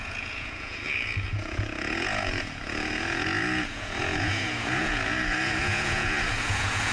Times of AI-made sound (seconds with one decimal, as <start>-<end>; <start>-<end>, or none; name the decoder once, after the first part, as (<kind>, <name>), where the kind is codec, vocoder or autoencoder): 0.0-6.9 (vocoder, Vocos)